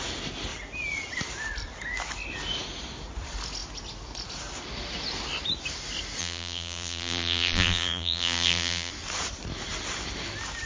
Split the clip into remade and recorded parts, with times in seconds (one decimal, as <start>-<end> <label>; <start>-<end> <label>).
0.0-6.2 recorded; 6.2-8.9 remade; 8.9-10.7 recorded